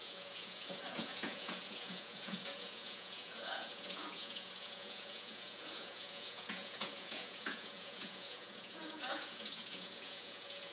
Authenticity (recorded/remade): remade